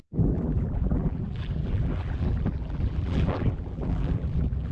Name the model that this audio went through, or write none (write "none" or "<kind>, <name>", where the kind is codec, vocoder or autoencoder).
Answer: vocoder, BigVGAN v2